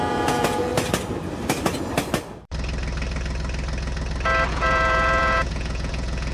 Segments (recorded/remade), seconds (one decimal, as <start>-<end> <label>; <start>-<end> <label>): 0.0-0.7 remade; 0.7-4.5 recorded; 4.5-6.3 remade